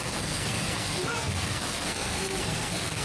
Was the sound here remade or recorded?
remade